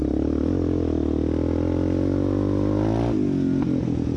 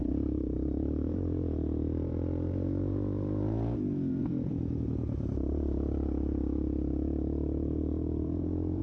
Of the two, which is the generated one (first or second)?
second